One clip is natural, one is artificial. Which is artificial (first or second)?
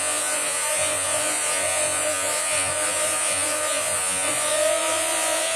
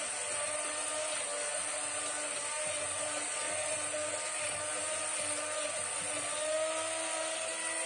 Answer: first